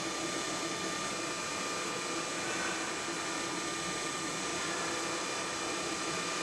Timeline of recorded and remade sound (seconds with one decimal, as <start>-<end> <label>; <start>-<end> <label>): 0.0-6.4 recorded